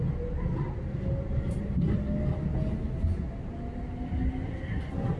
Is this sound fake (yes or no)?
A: no